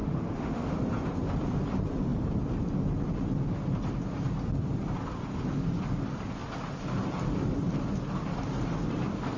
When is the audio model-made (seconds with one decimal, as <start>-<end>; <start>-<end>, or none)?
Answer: 0.0-0.8